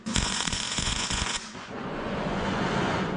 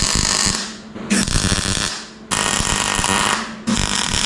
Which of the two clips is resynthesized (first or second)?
first